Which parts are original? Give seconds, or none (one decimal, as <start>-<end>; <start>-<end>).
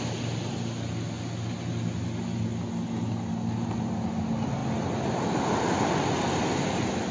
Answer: 0.0-7.1